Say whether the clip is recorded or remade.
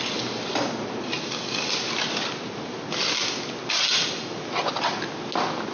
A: recorded